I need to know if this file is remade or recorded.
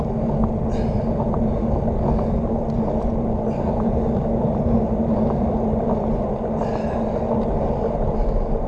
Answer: recorded